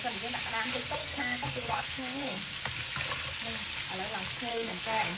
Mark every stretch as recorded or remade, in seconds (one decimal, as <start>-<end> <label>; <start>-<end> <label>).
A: 0.0-1.0 recorded; 1.0-2.7 remade; 2.7-4.5 recorded; 4.5-5.2 remade